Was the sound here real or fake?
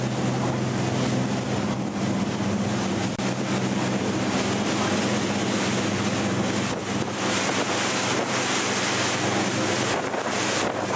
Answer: real